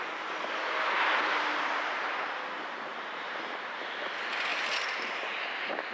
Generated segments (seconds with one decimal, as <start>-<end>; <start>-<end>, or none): 2.9-3.8; 4.5-5.2